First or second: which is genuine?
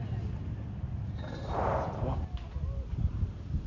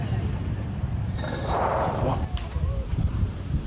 first